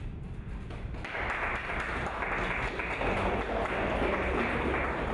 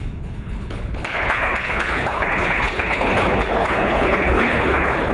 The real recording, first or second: first